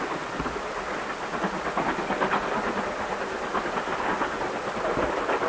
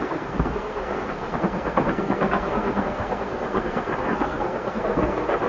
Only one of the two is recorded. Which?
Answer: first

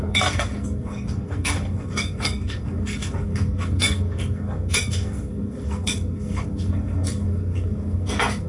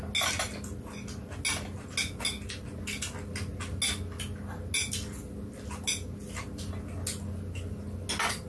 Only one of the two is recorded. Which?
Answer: second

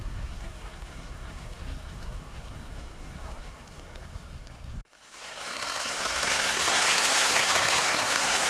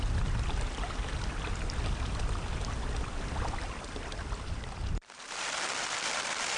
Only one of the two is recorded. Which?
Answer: second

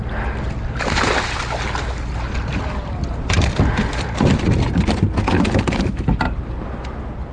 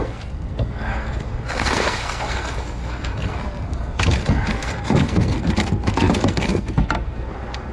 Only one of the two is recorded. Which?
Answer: first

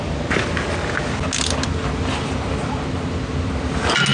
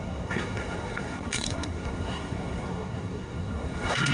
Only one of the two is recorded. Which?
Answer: first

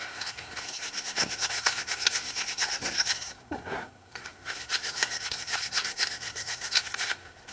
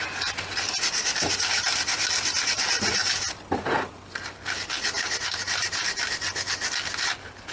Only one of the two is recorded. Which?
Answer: second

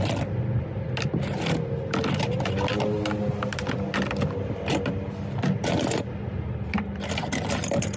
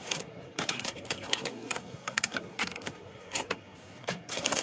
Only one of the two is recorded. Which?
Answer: first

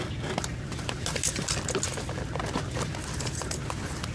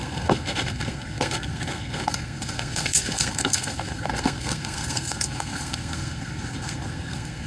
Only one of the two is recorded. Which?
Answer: first